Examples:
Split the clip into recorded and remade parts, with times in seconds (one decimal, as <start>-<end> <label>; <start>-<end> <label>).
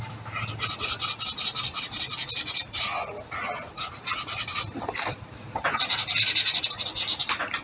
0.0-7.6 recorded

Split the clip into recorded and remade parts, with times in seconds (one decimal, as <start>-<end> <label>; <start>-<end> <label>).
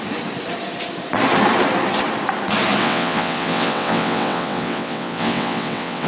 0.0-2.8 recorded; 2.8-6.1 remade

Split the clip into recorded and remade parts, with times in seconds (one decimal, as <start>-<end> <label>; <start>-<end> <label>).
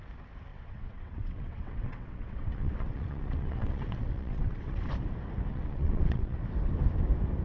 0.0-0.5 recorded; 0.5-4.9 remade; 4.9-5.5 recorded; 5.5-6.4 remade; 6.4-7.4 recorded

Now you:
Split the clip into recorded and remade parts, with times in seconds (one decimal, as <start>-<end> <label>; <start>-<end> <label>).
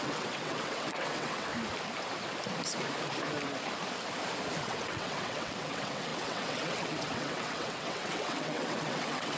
0.0-1.5 remade; 1.5-4.6 recorded; 4.6-9.4 remade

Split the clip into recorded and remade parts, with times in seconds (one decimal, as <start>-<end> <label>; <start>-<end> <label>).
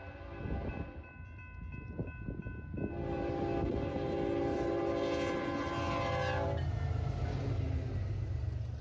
0.0-8.8 recorded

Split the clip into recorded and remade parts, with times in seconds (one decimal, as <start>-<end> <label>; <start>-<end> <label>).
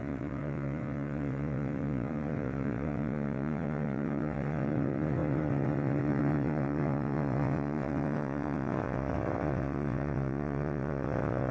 0.0-11.5 remade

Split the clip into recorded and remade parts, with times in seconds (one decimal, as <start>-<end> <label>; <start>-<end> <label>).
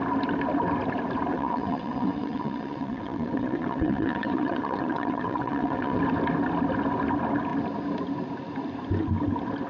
0.0-1.3 recorded; 1.3-6.0 remade; 6.0-9.7 recorded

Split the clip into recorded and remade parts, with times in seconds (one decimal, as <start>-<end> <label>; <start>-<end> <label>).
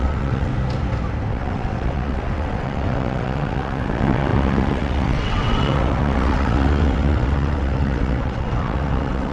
0.0-0.5 remade; 0.5-1.3 recorded; 1.3-9.3 remade